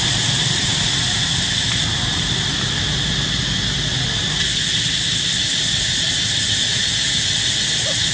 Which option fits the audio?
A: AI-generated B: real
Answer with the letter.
B